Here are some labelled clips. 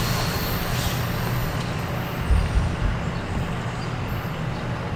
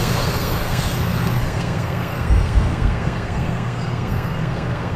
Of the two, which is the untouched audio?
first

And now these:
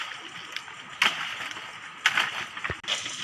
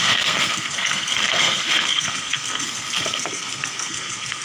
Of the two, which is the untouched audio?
first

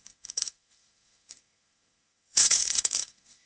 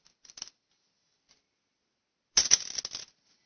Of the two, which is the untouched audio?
second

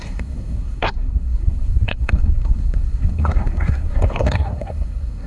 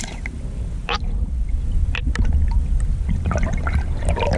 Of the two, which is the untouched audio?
second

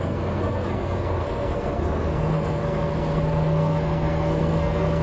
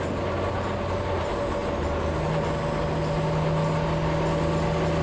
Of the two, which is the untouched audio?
second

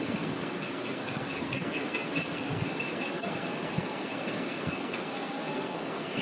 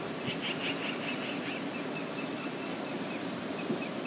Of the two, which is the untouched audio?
second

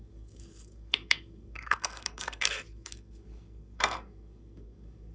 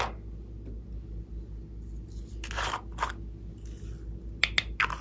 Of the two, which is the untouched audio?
second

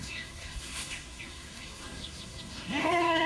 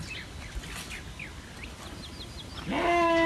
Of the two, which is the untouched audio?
second